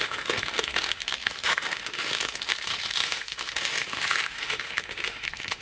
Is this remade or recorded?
remade